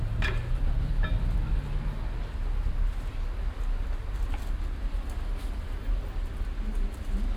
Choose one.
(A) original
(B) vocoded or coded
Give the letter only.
A